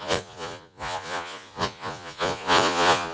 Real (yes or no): no